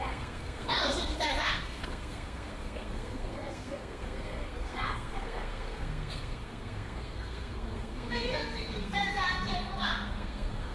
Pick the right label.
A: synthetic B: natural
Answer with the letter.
A